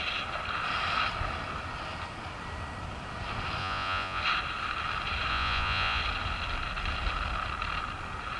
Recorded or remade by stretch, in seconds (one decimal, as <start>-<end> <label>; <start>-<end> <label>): 0.0-3.6 recorded; 3.6-4.2 remade; 4.2-5.3 recorded; 5.3-6.0 remade; 6.0-8.4 recorded